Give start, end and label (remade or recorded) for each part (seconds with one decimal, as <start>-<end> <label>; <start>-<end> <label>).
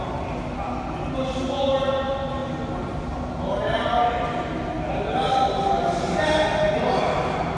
0.0-7.6 recorded